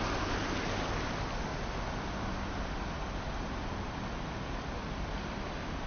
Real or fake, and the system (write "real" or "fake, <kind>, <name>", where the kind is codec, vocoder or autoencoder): real